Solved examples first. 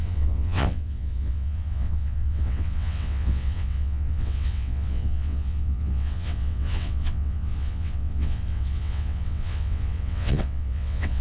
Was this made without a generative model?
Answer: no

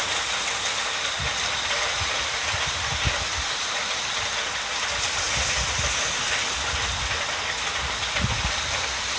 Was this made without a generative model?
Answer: yes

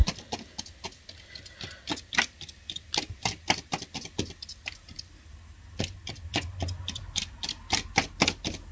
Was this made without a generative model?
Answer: yes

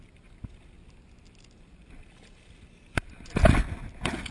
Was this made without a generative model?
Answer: yes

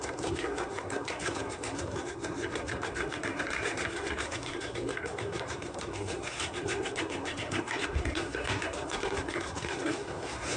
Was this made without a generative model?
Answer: no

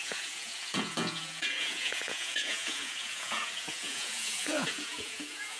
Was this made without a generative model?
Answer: no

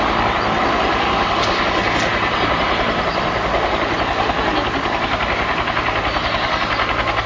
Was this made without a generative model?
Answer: yes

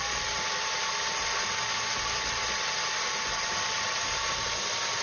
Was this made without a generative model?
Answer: yes